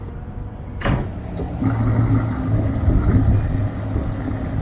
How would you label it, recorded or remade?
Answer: recorded